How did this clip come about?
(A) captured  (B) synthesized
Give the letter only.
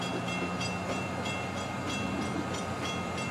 A